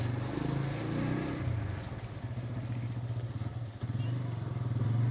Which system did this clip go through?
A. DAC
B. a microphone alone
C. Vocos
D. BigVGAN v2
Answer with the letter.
B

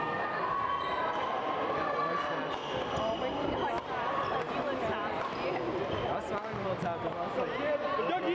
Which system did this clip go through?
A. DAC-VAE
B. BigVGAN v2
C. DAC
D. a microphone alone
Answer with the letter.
D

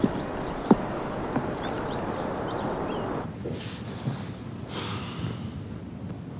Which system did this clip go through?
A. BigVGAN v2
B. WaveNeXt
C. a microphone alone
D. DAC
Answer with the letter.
C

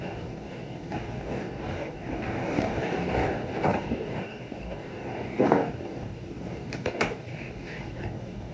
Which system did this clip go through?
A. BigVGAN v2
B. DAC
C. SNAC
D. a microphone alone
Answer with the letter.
B